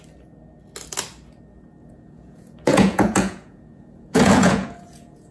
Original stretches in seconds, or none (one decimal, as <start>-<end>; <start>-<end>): 0.0-1.8